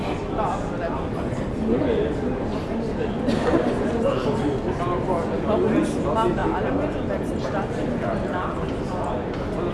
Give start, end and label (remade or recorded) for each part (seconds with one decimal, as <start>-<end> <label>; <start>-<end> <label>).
0.0-9.7 recorded